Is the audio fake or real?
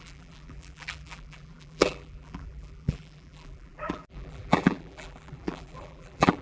fake